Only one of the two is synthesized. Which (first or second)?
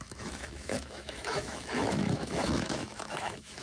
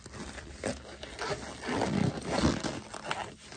first